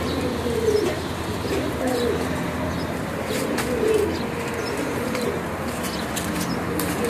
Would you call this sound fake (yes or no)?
no